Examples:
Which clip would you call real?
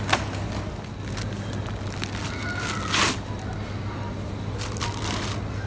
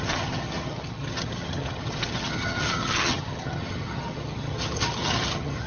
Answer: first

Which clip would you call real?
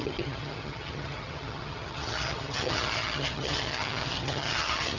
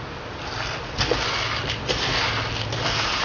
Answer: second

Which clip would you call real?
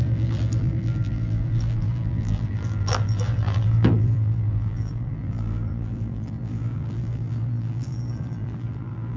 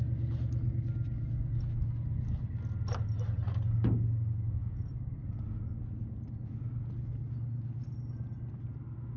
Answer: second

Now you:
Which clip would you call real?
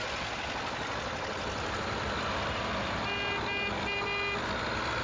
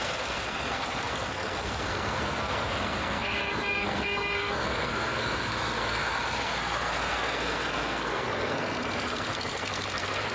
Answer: first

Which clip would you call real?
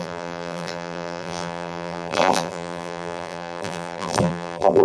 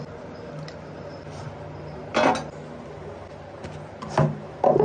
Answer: second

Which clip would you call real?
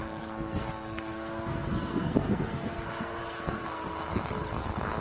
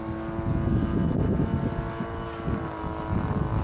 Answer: second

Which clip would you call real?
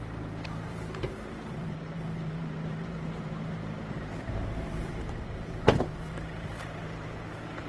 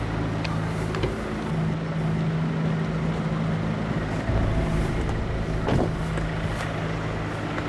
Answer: second